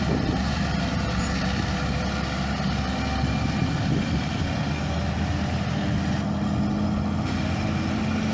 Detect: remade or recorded recorded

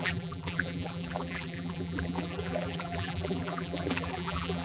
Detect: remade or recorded remade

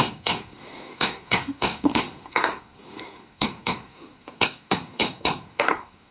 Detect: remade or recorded remade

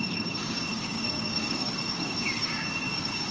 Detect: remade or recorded remade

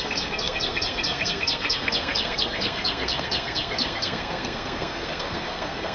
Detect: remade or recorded remade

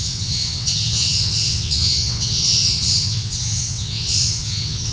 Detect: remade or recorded remade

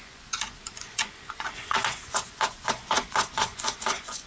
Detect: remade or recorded remade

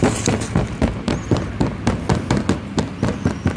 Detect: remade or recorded recorded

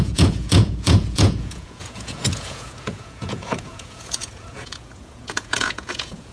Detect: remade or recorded remade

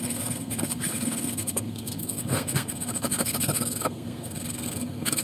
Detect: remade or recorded remade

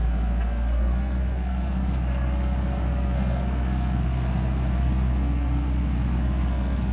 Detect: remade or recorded remade